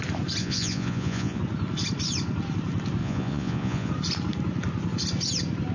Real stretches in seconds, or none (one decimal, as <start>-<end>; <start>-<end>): 0.0-0.4; 1.4-3.0; 3.9-5.7